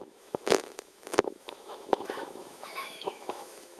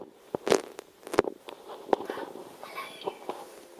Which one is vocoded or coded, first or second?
first